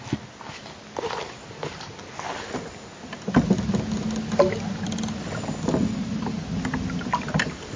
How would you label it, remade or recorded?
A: recorded